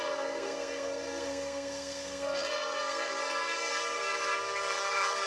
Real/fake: fake